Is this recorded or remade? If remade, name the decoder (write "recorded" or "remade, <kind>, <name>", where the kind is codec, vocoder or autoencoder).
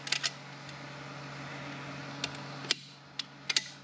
recorded